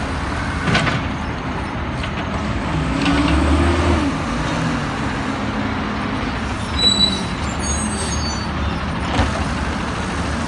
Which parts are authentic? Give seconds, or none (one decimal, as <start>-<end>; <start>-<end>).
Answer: 0.0-2.4; 3.8-10.5